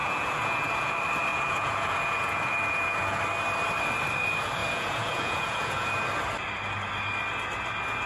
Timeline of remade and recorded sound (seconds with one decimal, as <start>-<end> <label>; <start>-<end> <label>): 0.0-0.9 remade; 0.9-1.3 recorded; 1.3-3.2 remade; 3.2-4.6 recorded; 4.6-5.9 remade; 5.9-8.1 recorded